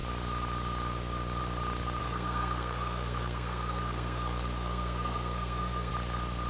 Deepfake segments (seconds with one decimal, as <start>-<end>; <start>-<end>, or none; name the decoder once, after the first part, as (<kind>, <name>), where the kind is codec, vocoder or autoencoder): 2.0-5.9 (codec, SNAC)